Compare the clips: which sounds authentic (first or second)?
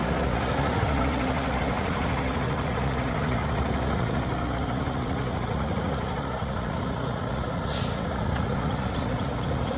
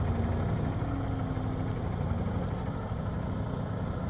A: second